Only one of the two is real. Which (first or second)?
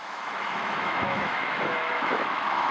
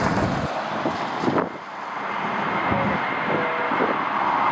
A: second